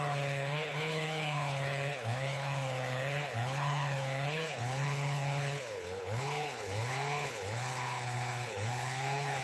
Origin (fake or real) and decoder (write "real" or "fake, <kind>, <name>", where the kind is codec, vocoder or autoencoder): fake, codec, HILCodec